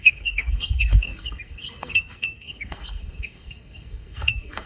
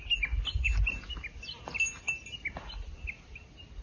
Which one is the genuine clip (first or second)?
second